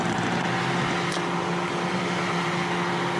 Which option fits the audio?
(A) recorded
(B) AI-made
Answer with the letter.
A